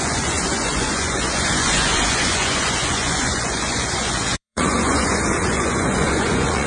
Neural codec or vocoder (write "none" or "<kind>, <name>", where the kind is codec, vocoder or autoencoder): vocoder, Vocos